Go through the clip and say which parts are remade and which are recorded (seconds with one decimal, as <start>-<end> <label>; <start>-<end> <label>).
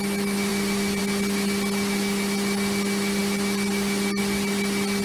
0.0-5.0 recorded